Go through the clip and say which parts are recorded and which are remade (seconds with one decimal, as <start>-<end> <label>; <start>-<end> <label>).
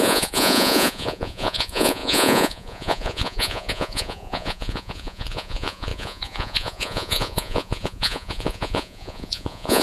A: 0.0-9.8 remade